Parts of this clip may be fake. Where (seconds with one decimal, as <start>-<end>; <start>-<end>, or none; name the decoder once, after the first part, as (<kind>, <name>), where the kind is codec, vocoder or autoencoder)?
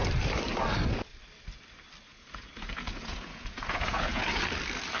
2.1-4.2 (vocoder, Vocos)